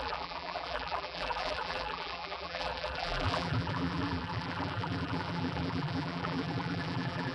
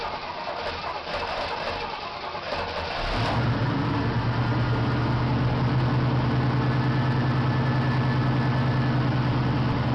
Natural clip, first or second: second